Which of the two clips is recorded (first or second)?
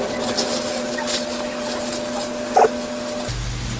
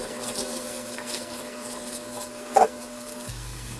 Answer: first